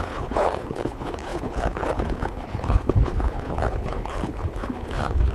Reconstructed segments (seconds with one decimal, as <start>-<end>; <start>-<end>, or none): 0.0-5.3